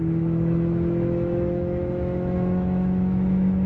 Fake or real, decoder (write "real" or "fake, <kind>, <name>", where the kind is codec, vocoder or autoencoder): fake, autoencoder, DAC-VAE